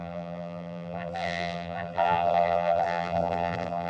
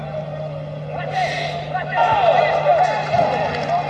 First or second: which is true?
second